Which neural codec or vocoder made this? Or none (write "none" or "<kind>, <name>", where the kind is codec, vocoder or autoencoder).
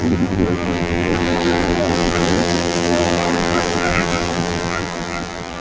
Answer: vocoder, BigVGAN v2